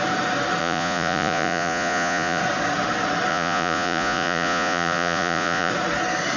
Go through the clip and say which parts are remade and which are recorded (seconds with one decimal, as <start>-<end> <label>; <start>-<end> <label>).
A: 0.0-0.6 recorded; 0.6-2.4 remade; 2.4-3.3 recorded; 3.3-5.7 remade; 5.7-6.4 recorded